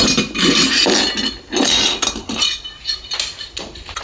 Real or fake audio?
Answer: real